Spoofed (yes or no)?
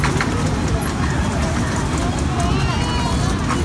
no